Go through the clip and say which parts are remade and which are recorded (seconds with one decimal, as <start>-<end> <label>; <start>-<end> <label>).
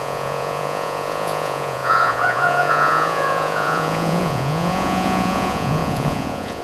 0.0-6.6 remade